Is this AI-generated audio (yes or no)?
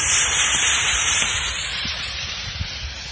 yes